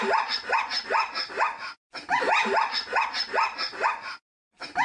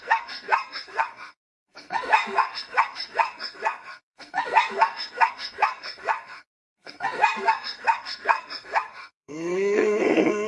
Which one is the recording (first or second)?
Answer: first